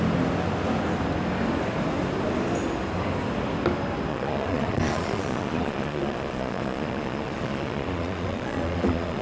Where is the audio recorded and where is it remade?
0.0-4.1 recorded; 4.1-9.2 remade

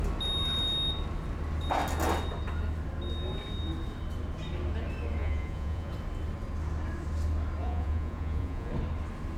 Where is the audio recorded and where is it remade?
0.0-5.2 recorded; 5.2-5.9 remade; 5.9-7.6 recorded; 7.6-8.7 remade; 8.7-9.4 recorded

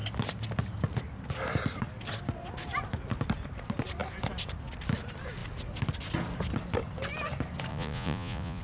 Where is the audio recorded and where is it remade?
0.0-7.7 recorded; 7.7-8.6 remade